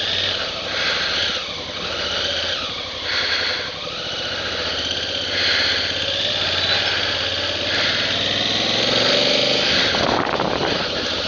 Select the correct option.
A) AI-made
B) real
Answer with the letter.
B